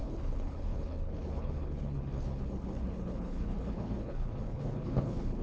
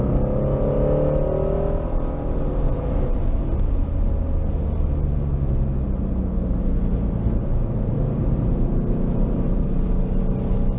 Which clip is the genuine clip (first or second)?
second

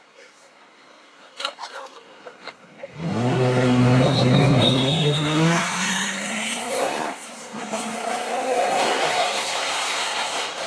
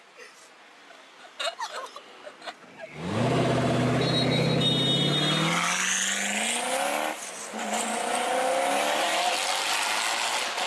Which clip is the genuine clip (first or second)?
second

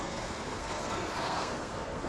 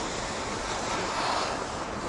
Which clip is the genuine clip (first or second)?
second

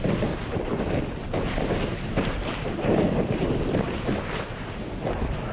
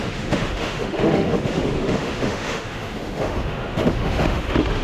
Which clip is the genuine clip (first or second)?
first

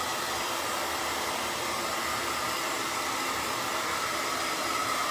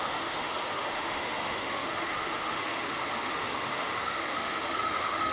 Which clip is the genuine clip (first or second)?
first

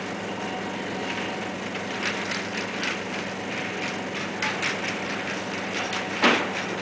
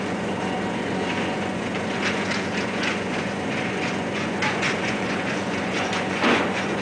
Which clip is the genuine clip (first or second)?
first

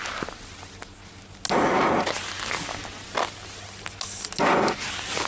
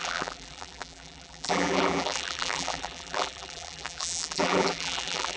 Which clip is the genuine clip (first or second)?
first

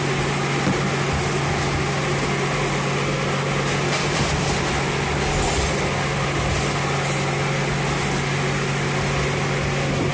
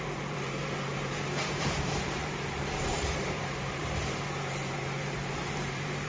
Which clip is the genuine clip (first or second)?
first